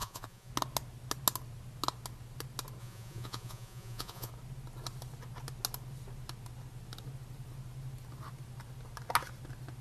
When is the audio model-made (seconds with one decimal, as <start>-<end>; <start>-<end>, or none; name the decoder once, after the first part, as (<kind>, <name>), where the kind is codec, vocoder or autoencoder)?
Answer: 0.0-0.5 (vocoder, Vocos); 2.8-4.3

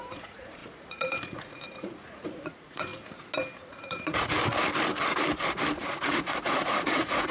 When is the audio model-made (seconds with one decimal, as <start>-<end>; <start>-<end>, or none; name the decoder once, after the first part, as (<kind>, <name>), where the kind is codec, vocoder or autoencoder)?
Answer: 0.0-2.9 (vocoder, Vocos); 3.6-4.4; 5.8-7.3

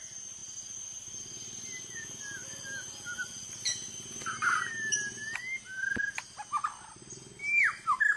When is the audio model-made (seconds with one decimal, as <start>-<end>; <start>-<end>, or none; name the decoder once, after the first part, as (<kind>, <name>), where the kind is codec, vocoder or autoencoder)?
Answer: none

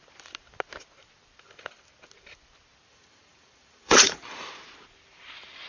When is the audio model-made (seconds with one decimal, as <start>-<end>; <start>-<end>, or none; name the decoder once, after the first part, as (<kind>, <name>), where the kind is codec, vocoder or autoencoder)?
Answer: 2.9-4.2 (vocoder, Vocos)

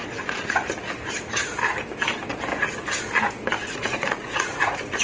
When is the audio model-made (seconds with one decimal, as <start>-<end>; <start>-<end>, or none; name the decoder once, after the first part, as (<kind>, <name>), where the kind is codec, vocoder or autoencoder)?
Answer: 0.0-0.6 (vocoder, Vocos); 3.6-5.0

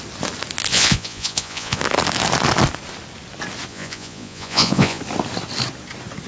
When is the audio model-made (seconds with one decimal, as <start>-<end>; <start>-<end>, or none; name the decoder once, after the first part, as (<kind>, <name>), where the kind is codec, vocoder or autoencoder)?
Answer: 0.7-1.8 (vocoder, Vocos); 3.7-5.0

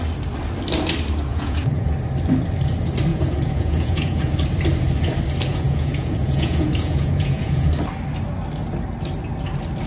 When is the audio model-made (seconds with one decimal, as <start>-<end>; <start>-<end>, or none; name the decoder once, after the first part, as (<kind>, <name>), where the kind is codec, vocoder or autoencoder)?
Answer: 1.3-1.9 (vocoder, Vocos); 3.1-4.2; 5.5-7.7